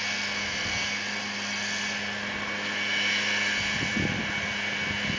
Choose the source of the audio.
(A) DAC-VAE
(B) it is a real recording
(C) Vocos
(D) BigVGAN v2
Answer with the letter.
B